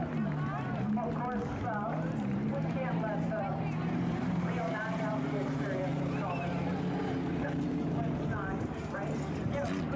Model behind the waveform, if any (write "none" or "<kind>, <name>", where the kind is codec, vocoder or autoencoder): vocoder, BigVGAN v2